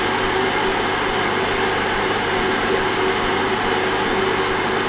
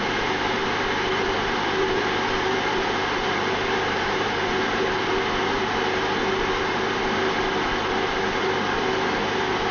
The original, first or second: first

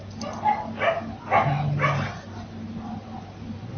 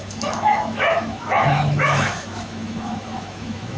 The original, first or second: first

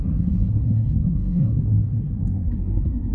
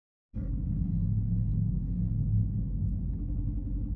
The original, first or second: second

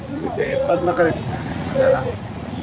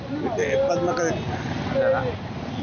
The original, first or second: second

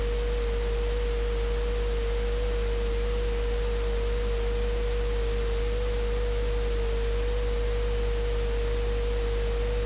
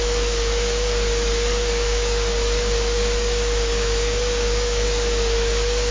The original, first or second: first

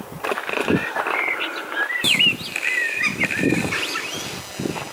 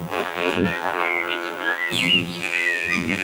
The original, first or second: first